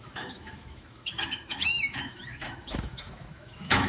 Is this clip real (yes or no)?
no